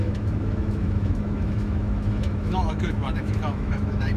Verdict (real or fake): fake